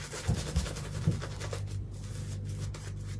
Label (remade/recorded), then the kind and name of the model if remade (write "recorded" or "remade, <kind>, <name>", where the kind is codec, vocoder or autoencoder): recorded